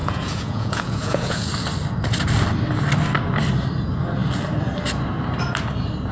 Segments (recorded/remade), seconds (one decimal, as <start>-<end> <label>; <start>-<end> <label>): 0.0-1.5 remade; 1.5-6.1 recorded

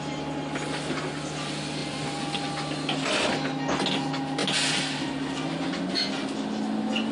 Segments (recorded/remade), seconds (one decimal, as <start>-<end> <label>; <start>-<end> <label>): 0.0-7.1 recorded

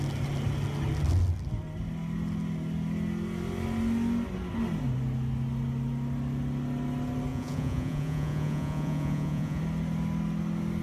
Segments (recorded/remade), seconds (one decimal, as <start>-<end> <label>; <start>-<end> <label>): 0.0-7.3 recorded; 7.3-9.6 remade; 9.6-10.8 recorded

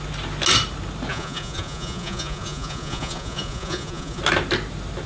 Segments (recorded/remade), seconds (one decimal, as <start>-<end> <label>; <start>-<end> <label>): 0.0-1.1 recorded; 1.1-4.2 remade; 4.2-5.1 recorded